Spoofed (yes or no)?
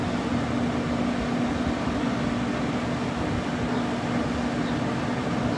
no